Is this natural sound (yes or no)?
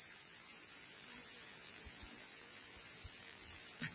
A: no